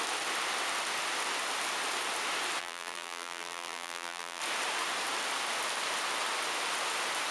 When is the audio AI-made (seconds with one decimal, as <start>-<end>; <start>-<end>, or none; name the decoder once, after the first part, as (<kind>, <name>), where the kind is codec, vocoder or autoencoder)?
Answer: 2.6-4.4 (vocoder, BigVGAN v2)